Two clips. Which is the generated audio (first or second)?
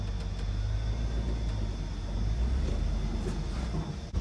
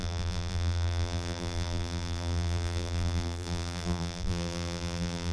second